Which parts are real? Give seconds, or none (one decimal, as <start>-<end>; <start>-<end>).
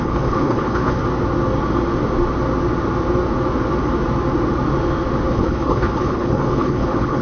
1.0-5.3